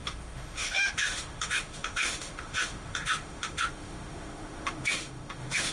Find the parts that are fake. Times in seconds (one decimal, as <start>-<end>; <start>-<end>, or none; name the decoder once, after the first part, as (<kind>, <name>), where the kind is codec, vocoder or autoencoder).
0.0-5.7 (autoencoder, DAC-VAE)